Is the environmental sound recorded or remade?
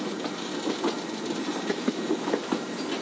recorded